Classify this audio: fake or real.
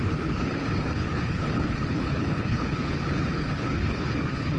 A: fake